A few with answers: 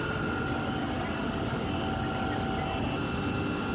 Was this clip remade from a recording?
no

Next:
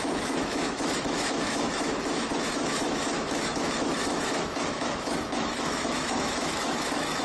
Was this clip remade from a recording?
yes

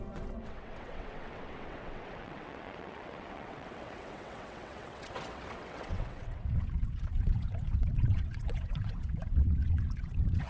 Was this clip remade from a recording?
yes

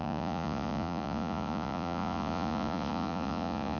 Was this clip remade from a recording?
yes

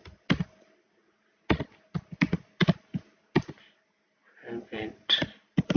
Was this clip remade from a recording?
no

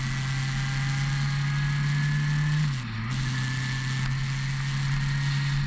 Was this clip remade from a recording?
no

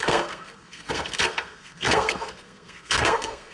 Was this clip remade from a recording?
yes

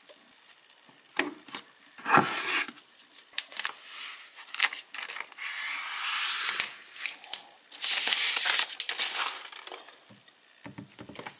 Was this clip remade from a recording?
no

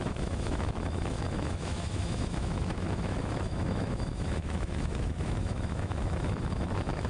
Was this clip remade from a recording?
yes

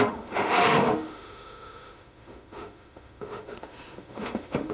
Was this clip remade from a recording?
yes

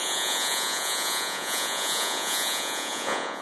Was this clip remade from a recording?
yes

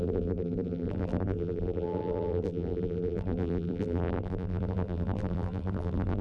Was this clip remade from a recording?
yes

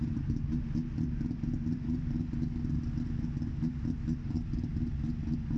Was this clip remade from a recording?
no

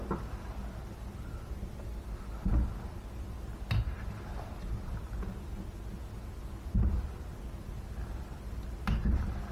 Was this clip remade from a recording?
no